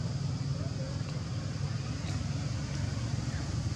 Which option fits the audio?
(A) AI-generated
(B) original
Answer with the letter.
B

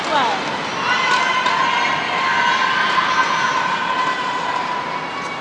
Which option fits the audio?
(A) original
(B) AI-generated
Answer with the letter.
A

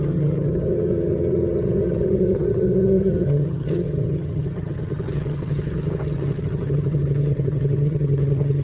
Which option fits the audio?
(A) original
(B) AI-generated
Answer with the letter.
B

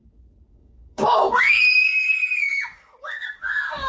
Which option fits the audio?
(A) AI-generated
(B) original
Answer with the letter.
A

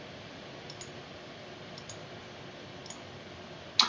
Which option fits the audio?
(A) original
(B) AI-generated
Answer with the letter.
A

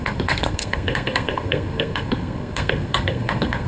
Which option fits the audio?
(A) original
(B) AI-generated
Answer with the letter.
B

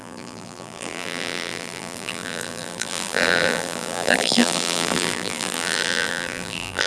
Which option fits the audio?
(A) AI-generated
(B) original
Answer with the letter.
A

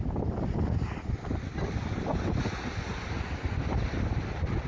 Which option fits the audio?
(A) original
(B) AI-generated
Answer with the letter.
A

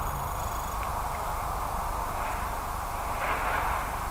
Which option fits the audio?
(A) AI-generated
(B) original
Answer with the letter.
B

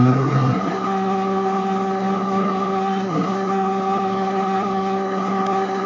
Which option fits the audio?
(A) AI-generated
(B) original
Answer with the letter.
A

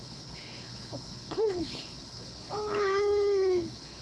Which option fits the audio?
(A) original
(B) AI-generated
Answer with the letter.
B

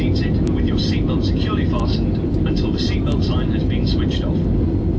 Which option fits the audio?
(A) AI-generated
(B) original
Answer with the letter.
B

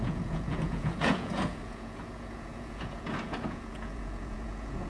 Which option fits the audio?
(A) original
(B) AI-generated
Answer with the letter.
B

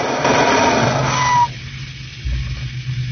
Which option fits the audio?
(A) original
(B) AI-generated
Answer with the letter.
A